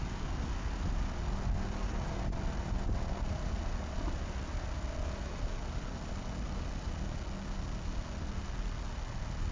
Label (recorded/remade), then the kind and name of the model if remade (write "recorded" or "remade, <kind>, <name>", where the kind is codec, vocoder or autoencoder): recorded